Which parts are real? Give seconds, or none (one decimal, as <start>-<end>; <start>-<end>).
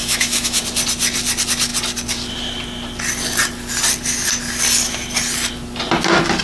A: 0.6-6.4